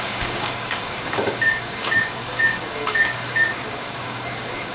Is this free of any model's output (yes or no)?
no